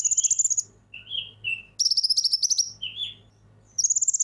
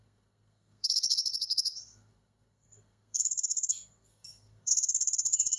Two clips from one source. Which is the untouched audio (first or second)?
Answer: first